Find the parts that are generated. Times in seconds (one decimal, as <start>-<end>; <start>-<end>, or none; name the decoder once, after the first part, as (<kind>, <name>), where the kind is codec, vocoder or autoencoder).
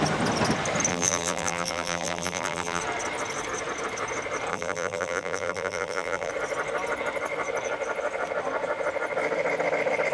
0.9-2.8 (vocoder, BigVGAN v2); 4.5-6.3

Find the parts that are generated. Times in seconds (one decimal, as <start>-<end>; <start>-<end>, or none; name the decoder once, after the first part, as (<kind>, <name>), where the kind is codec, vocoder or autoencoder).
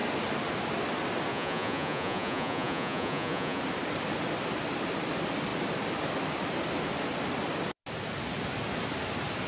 1.3-3.6 (vocoder, Vocos)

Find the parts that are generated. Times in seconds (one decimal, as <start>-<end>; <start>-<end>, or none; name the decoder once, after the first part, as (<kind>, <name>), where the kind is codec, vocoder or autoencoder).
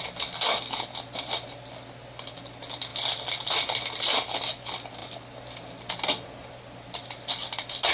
none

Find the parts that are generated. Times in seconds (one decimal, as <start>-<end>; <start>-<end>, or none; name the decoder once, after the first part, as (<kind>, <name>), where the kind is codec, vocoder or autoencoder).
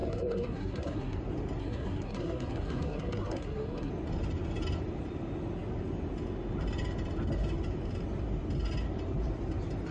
0.0-1.2 (codec, SNAC); 1.6-3.9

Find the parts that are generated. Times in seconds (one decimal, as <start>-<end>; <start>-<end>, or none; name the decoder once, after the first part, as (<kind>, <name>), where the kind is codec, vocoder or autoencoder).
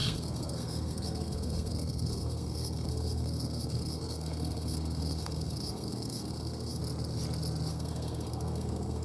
0.0-6.8 (codec, SNAC); 7.7-9.0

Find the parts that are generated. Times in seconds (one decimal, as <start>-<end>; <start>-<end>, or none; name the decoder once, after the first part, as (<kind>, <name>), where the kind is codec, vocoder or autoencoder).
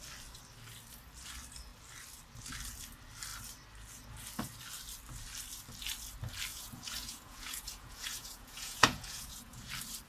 6.5-9.7 (vocoder, Vocos)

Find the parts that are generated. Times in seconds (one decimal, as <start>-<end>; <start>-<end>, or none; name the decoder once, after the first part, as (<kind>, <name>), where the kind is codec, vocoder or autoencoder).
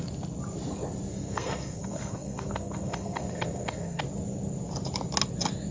1.1-4.0 (codec, SNAC)